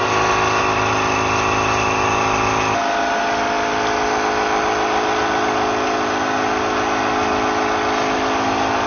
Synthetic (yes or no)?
no